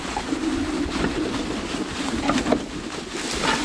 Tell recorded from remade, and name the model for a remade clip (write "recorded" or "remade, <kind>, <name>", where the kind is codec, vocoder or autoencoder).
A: recorded